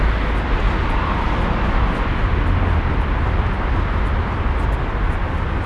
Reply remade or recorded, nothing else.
recorded